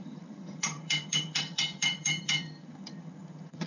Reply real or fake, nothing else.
fake